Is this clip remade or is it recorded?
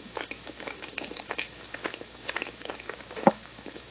remade